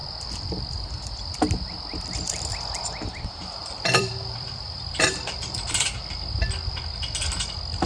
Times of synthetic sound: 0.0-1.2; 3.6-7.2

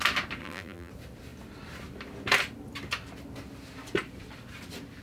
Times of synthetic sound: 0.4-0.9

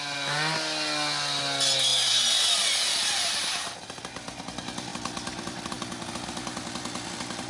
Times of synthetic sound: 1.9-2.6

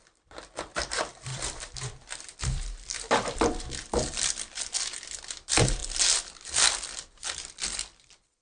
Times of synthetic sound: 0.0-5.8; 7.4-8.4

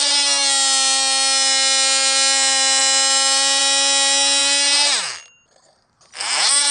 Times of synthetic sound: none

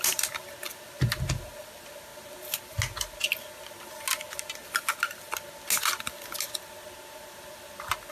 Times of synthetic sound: none

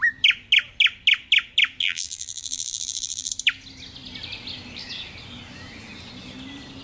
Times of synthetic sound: 1.8-3.3

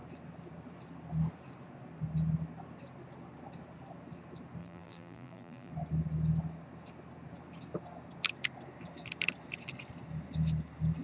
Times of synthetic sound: 4.6-5.7